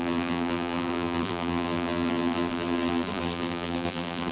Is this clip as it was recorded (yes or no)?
no